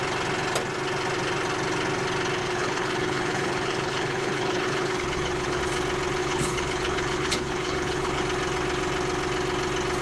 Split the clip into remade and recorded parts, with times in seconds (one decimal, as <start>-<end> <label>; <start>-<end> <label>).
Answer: 0.0-2.4 recorded; 2.4-5.6 remade; 5.6-6.2 recorded; 6.2-8.2 remade; 8.2-10.0 recorded